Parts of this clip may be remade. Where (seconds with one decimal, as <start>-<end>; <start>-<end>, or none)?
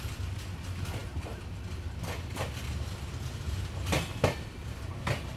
none